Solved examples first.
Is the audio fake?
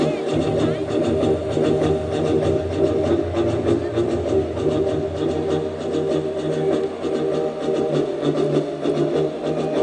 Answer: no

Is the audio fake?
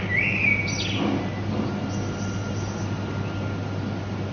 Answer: no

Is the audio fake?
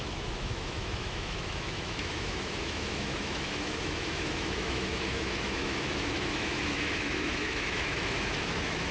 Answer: yes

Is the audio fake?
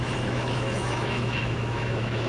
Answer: yes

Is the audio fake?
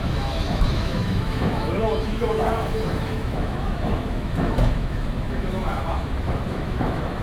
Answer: yes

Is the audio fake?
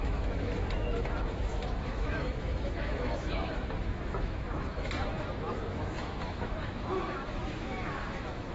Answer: yes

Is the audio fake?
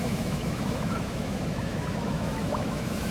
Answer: yes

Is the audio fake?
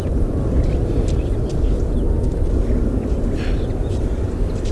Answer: no